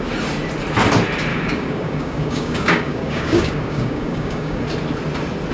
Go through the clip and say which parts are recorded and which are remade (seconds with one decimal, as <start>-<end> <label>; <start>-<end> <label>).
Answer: 0.0-1.3 recorded; 1.3-4.6 remade; 4.6-5.5 recorded